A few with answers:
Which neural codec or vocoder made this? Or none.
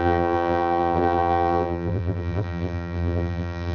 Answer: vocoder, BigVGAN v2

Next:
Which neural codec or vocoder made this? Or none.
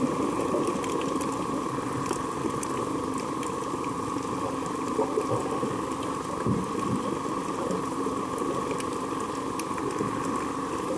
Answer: none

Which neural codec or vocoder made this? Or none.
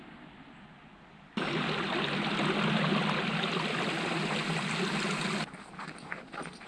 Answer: none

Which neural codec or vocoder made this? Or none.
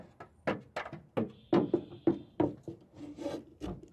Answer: none